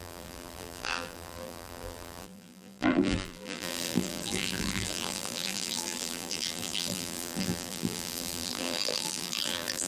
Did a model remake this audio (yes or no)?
yes